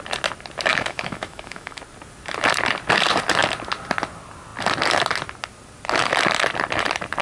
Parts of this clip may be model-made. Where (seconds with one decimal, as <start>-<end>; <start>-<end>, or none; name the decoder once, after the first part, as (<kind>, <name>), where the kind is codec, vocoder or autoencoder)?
0.7-1.8 (autoencoder, DAC-VAE)